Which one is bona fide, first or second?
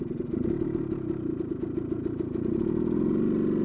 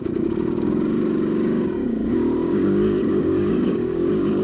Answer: first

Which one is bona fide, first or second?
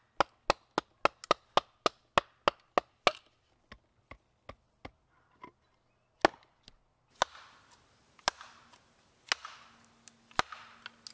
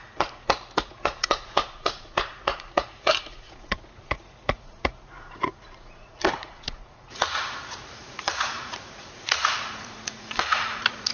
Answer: first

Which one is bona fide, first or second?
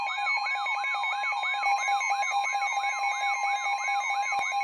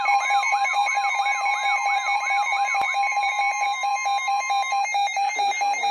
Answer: first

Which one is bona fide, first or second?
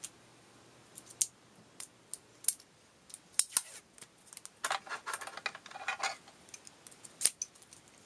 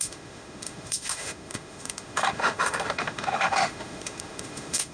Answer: first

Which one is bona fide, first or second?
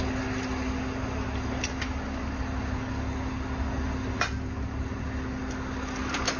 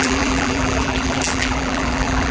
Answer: first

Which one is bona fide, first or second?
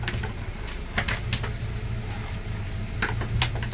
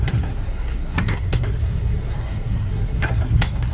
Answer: first